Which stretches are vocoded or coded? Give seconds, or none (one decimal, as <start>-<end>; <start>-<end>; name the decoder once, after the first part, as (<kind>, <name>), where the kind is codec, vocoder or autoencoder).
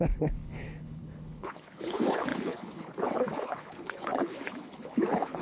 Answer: 0.0-5.4 (codec, HILCodec)